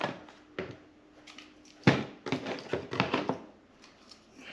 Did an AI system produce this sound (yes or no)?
no